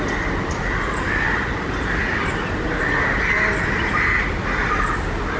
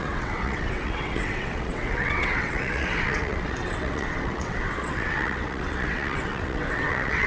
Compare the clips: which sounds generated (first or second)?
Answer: second